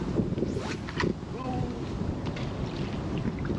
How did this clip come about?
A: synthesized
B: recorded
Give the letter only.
B